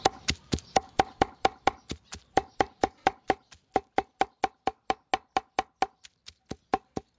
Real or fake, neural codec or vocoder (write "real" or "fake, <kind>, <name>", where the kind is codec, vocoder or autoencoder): real